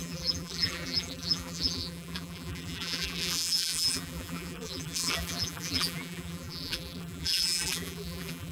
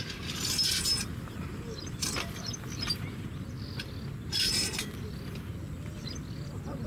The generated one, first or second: first